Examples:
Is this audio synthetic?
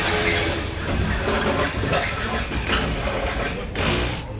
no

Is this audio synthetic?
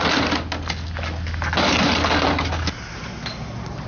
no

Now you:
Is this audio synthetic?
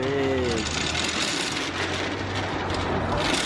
no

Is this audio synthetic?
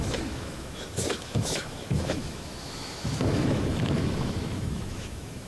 yes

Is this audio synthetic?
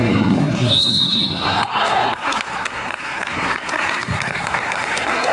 yes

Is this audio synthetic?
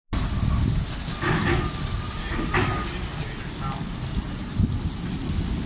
no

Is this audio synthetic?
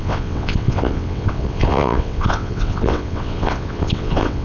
yes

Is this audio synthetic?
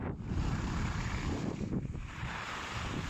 yes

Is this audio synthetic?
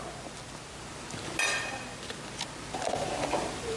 no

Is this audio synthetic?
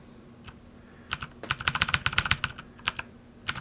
no